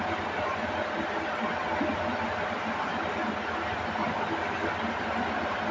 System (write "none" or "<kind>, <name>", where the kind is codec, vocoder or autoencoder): none